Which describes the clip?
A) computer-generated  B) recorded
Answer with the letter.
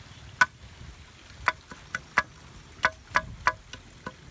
B